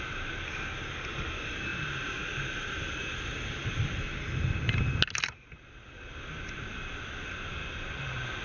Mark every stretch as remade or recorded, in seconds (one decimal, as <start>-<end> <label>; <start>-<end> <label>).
0.0-8.4 recorded